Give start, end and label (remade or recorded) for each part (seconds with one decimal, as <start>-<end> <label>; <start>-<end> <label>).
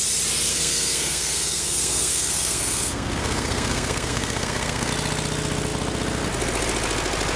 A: 0.0-0.5 recorded; 0.5-4.9 remade; 4.9-7.4 recorded